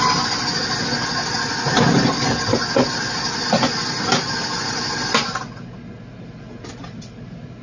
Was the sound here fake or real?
real